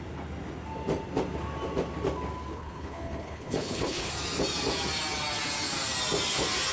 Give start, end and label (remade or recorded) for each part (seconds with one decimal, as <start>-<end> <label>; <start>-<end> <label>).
0.0-2.5 recorded; 2.5-4.1 remade; 4.1-6.7 recorded